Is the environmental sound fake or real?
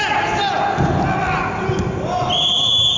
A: real